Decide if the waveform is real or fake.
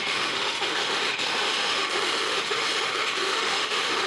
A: fake